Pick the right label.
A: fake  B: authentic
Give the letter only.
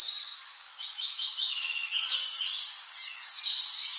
A